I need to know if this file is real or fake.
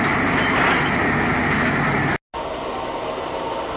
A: real